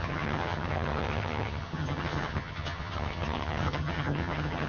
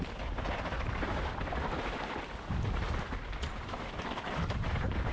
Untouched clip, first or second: second